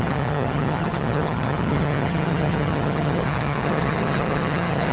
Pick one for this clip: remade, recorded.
remade